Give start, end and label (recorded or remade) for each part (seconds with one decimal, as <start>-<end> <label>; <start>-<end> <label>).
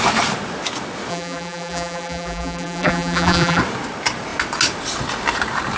0.0-1.1 recorded; 1.1-3.6 remade; 3.6-5.8 recorded